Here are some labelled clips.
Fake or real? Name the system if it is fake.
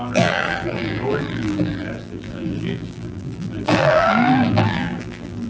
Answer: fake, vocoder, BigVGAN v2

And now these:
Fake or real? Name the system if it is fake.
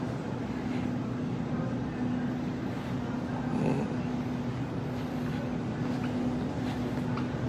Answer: real